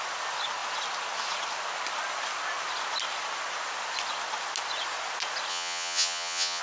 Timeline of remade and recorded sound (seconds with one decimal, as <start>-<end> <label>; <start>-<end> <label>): 0.0-5.5 recorded; 5.5-6.6 remade